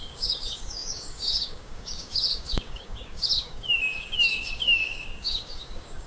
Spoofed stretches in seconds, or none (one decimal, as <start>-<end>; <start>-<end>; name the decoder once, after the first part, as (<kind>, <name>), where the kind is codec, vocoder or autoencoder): 0.0-6.1 (codec, DAC)